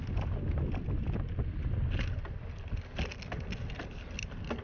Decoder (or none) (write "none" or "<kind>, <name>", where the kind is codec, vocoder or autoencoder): none